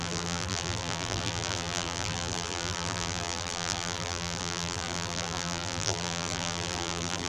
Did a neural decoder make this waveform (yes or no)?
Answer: yes